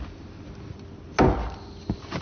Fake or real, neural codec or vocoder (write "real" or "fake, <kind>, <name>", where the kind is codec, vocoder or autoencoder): real